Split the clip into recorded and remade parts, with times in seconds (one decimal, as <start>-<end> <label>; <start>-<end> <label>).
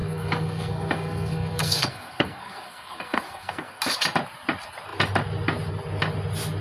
0.0-3.8 remade; 3.8-6.6 recorded